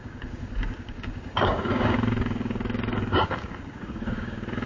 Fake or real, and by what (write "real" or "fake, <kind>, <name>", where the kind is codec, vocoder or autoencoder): fake, codec, DAC